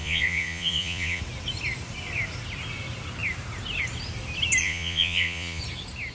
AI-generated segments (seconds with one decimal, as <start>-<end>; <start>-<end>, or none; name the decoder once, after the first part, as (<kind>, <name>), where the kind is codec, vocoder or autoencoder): 0.0-1.2 (vocoder, Vocos); 4.6-5.6